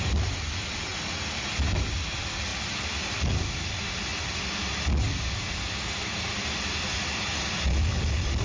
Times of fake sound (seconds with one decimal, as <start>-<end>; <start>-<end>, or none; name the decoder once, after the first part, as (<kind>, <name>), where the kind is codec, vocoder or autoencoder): none